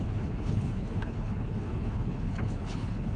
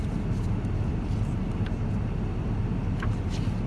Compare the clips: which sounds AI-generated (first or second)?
first